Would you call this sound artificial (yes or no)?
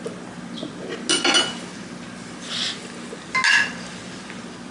no